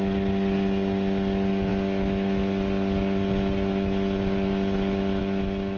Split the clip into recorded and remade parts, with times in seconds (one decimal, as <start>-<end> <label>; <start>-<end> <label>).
0.0-5.8 recorded